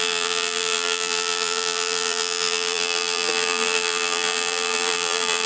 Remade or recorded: remade